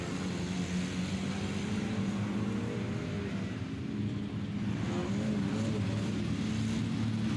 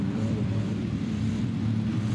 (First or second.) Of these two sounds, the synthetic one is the second